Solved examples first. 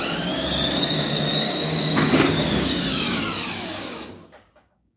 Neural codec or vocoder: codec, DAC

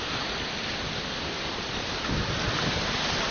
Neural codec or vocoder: vocoder, BigVGAN v2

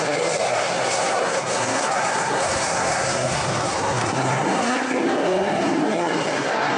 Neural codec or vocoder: codec, SNAC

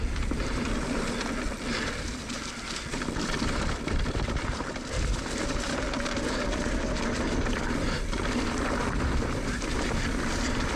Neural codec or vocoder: vocoder, BigVGAN v2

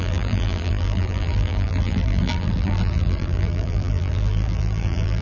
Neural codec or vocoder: vocoder, BigVGAN v2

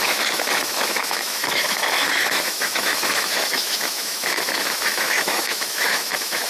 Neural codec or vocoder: autoencoder, DAC-VAE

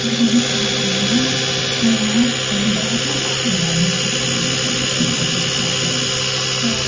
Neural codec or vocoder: none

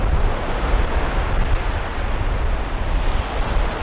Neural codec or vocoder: none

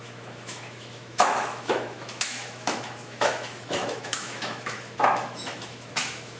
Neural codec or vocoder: autoencoder, DAC-VAE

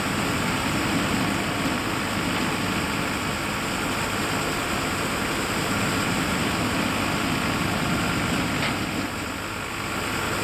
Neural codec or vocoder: none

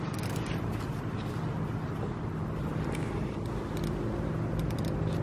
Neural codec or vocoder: none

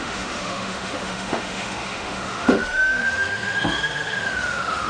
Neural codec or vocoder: autoencoder, DAC-VAE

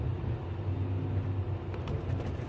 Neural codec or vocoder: none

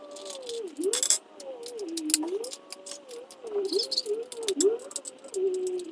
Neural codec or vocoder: none